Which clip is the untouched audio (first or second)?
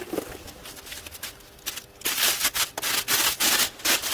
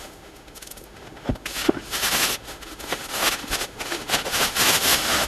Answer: first